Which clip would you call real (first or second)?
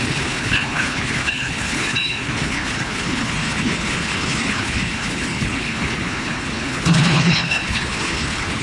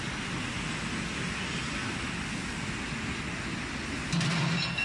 second